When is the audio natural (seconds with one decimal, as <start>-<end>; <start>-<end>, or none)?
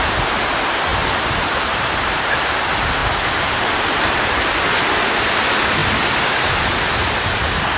0.0-0.9; 2.0-7.8